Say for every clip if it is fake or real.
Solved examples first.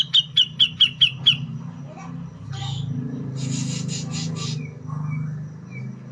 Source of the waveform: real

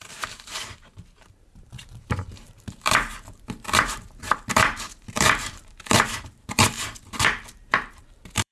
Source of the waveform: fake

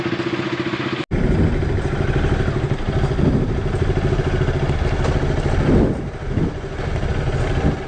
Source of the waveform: real